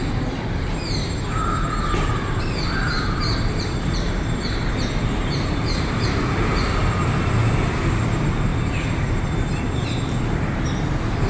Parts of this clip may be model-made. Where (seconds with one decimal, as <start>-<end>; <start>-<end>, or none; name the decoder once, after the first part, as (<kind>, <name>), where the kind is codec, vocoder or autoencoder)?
1.0-6.1 (vocoder, BigVGAN v2)